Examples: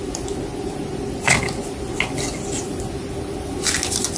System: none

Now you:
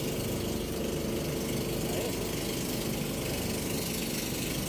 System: none